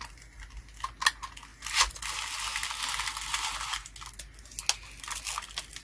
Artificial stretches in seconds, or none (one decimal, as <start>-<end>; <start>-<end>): none